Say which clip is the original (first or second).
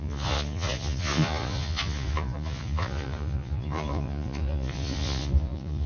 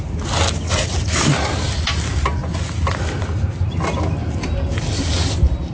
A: second